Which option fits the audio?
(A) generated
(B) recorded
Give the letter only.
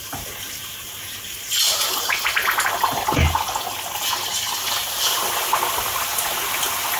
B